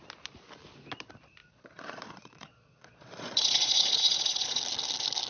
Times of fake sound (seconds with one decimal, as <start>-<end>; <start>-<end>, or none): 1.4-4.6